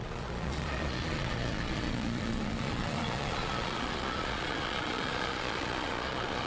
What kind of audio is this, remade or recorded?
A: remade